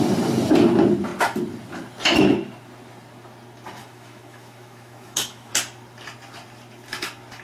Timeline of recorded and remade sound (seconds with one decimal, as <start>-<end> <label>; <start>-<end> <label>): 0.0-3.8 recorded; 3.8-5.5 remade; 5.5-7.4 recorded